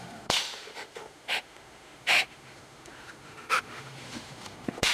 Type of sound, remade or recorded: remade